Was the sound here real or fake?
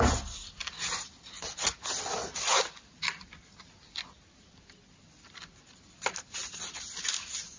real